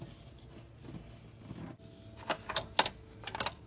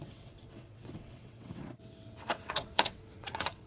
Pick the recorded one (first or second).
first